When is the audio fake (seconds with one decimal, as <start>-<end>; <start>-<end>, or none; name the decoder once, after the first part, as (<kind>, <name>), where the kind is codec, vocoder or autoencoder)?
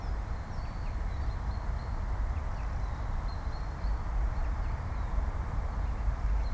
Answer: 0.0-6.5 (vocoder, BigVGAN v2)